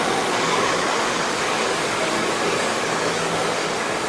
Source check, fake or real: fake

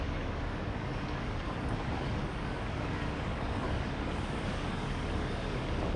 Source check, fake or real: fake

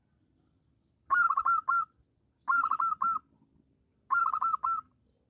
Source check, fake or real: real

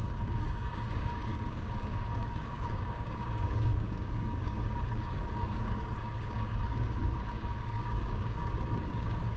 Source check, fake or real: fake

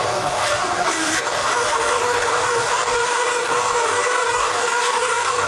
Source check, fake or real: fake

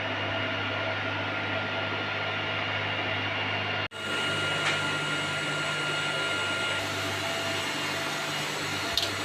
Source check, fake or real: real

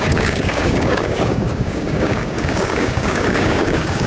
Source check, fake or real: fake